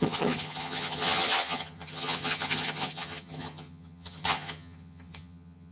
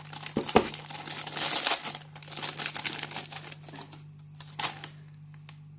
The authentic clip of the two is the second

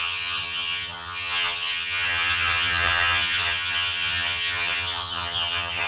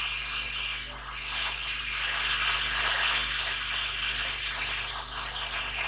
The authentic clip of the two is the second